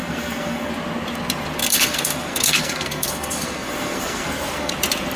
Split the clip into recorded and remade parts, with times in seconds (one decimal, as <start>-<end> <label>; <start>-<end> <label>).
0.0-0.7 remade; 0.7-1.6 recorded; 1.6-4.7 remade; 4.7-5.2 recorded